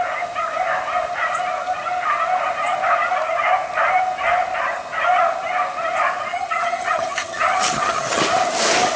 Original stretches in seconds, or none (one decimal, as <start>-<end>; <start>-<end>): 0.0-6.3; 8.2-9.0

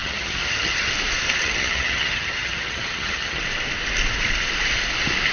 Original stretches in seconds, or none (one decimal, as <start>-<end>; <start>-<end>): 0.9-1.4; 3.4-5.3

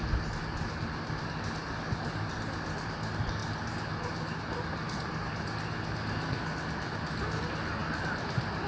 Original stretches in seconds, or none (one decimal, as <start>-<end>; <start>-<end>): 0.0-8.7

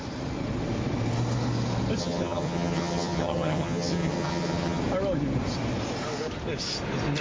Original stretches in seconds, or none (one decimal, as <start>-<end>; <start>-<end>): 0.0-2.0; 4.8-7.2

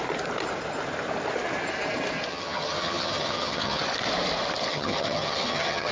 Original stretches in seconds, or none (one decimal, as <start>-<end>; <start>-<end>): 0.0-2.3; 3.8-4.7